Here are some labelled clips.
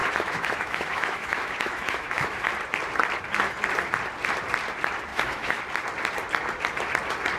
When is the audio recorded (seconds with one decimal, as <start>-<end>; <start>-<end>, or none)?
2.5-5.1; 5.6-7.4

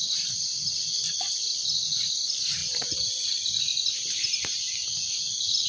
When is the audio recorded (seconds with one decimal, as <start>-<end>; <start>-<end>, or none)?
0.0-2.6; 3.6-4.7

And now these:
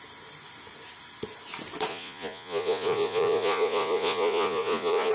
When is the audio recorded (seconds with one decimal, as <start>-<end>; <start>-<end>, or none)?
0.0-1.9

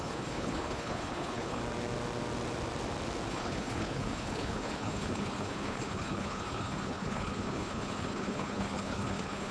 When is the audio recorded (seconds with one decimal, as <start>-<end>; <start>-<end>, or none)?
1.6-3.3

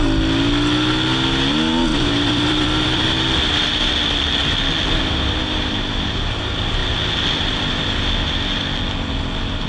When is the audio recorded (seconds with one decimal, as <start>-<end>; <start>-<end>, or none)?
0.0-1.9; 3.9-4.4; 5.4-9.7

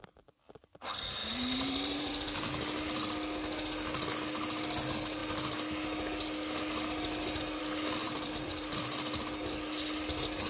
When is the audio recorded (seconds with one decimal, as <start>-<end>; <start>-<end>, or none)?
0.0-1.2; 2.5-8.0; 8.8-10.5

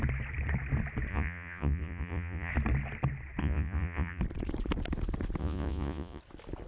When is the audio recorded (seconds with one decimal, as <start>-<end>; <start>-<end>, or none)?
0.0-1.1; 2.5-3.4; 4.2-5.4; 6.2-6.7

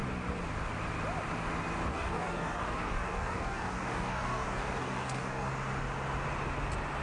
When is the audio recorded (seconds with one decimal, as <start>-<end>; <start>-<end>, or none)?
0.0-1.9; 5.5-7.0